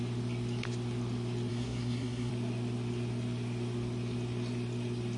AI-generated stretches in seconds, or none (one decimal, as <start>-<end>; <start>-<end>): 1.5-2.3